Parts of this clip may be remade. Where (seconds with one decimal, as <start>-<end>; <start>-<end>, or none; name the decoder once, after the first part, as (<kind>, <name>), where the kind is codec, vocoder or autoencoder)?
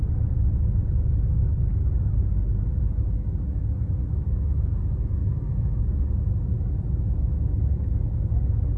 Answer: 4.1-4.7 (autoencoder, DAC-VAE); 5.2-5.8